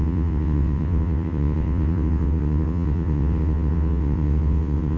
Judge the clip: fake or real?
fake